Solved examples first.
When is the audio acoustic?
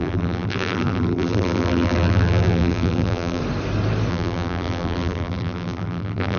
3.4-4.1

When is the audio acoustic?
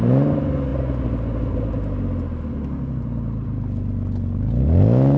0.0-5.2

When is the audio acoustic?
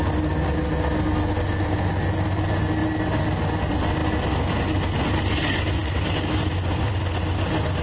0.0-7.8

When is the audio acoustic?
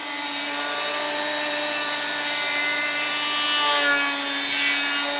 3.1-5.2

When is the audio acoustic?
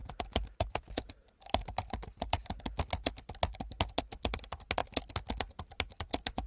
2.6-6.5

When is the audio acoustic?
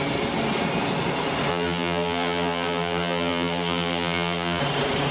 0.0-1.5; 4.6-5.1